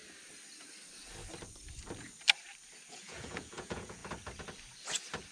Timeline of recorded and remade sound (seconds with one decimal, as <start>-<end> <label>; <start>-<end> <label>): 0.0-2.9 recorded; 2.9-4.0 remade; 4.0-5.3 recorded